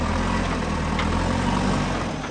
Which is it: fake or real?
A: real